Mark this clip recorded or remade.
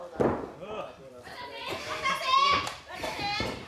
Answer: recorded